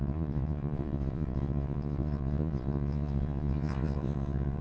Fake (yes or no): yes